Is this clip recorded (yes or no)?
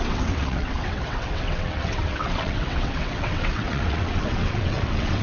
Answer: no